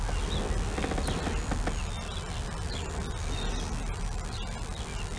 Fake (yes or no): no